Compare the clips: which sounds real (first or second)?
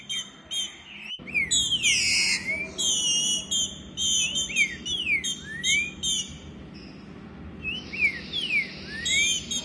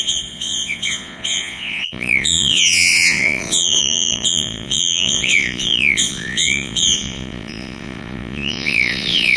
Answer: first